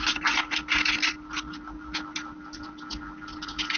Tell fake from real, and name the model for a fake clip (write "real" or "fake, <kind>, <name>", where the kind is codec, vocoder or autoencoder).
real